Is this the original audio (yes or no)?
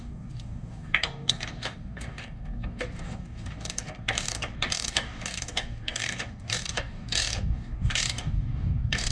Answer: no